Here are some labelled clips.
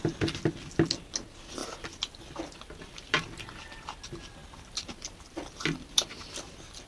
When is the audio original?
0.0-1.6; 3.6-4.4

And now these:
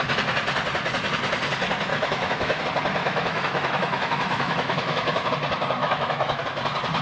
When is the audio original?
0.0-1.9; 2.6-3.0; 5.3-5.8; 6.4-7.0

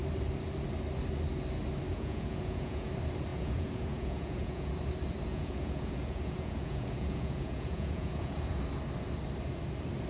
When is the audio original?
0.0-1.9; 2.9-3.3; 4.7-5.3; 8.6-10.1

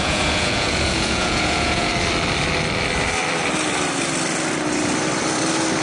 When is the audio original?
1.9-5.8

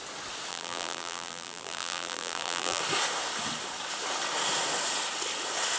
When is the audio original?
0.0-0.5; 2.8-5.8